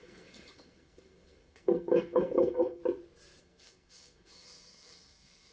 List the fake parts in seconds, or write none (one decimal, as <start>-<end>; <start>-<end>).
0.0-2.8; 3.4-5.5